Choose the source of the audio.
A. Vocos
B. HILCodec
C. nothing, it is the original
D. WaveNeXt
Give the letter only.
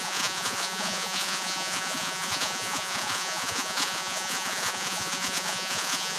A